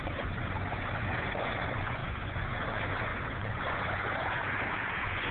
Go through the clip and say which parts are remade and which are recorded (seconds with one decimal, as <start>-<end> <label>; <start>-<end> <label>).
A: 0.0-5.3 remade